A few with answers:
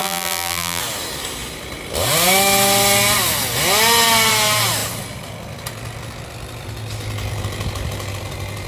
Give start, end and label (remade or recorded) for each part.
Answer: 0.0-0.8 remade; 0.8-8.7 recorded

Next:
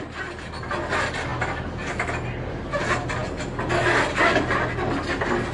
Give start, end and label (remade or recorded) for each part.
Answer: 0.0-5.5 recorded

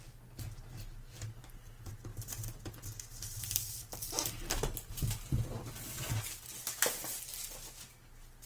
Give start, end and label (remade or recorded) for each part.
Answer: 0.0-8.5 recorded

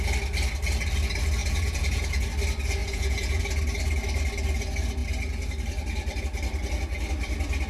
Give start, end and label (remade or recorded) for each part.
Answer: 0.0-1.4 recorded; 1.4-2.3 remade; 2.3-2.8 recorded; 2.8-3.4 remade; 3.4-7.7 recorded

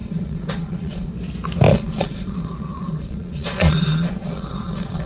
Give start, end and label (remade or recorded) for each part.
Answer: 0.0-1.1 remade; 1.1-1.7 recorded; 1.7-5.1 remade